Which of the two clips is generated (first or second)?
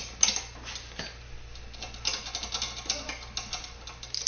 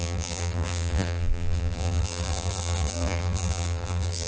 second